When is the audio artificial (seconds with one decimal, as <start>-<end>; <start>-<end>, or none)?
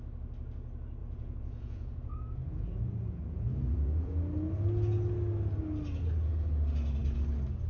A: 1.0-4.1